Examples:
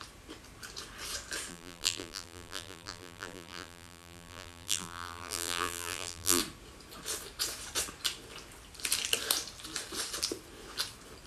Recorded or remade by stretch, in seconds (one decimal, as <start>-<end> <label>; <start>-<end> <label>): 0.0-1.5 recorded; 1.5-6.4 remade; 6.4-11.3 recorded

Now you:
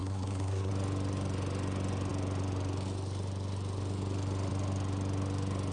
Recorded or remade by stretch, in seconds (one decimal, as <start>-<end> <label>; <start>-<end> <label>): 0.0-0.7 remade; 0.7-5.7 recorded

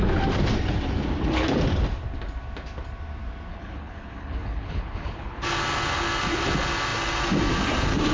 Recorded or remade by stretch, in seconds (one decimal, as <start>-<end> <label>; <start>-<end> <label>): 0.0-3.5 recorded; 3.5-5.4 remade; 5.4-8.1 recorded

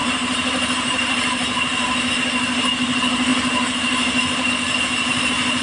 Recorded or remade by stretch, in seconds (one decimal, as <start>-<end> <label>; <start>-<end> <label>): 0.0-2.1 remade; 2.1-3.3 recorded; 3.3-4.5 remade; 4.5-5.6 recorded

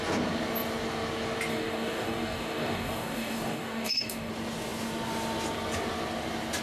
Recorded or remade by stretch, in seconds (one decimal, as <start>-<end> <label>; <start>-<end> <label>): 0.0-1.5 recorded; 1.5-4.3 remade; 4.3-6.6 recorded

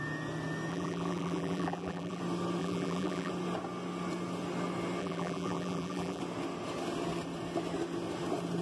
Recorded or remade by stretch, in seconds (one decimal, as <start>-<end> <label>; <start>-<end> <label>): 0.0-0.7 recorded; 0.7-2.2 remade; 2.2-2.6 recorded; 2.6-3.3 remade; 3.3-5.0 recorded; 5.0-6.2 remade; 6.2-8.6 recorded